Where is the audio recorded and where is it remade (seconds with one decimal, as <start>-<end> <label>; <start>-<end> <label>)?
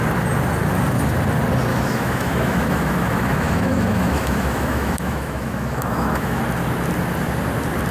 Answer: 0.0-1.7 recorded; 1.7-6.4 remade; 6.4-7.9 recorded